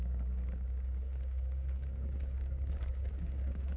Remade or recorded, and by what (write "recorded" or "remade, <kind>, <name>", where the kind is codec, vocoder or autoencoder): remade, codec, DAC